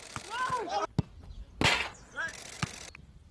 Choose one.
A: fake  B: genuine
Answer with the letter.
B